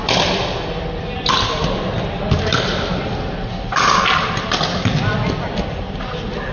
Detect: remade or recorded recorded